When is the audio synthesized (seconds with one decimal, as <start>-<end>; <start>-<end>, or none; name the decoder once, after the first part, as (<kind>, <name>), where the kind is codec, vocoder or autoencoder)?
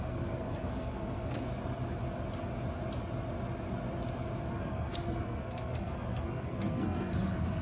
0.0-1.5 (codec, SNAC); 4.5-7.6